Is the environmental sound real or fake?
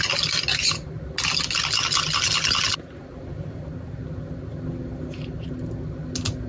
real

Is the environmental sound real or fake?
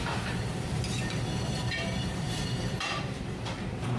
fake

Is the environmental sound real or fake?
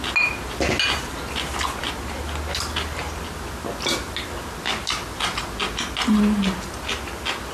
real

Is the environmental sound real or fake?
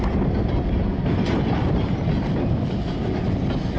real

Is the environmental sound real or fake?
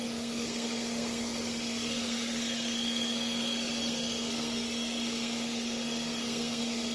fake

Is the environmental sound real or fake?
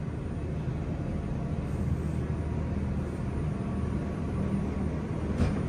real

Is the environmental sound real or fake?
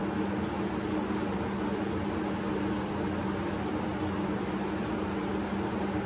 real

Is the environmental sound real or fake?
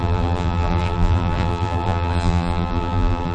fake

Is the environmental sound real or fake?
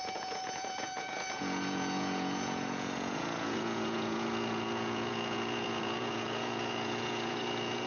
fake